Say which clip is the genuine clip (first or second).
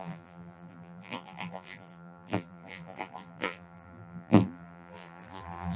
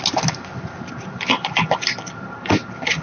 second